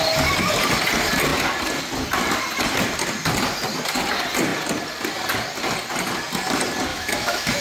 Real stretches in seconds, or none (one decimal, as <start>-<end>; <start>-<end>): 0.0-6.9